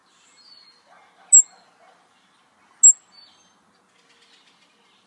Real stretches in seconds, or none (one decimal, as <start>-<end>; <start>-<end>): 0.0-5.1